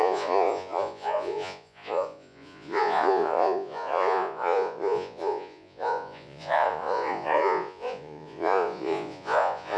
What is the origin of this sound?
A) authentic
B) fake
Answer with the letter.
B